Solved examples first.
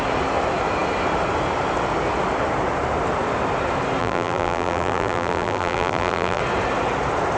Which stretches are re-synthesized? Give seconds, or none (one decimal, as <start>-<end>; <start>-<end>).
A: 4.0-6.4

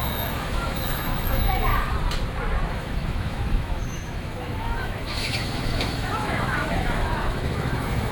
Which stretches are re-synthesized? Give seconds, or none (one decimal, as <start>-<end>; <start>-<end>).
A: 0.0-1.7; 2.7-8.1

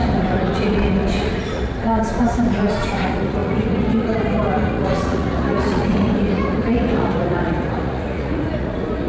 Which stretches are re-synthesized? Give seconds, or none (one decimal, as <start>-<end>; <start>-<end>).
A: 0.0-9.1

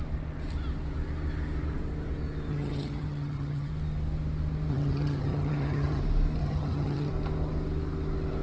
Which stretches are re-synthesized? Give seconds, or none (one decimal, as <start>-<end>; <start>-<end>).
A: 2.5-3.7; 4.7-6.0; 6.4-7.1

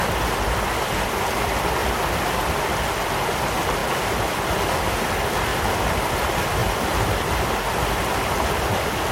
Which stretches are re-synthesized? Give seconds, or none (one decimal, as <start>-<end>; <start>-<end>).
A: 5.5-6.1; 6.6-7.1